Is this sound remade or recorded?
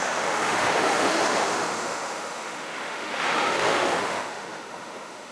remade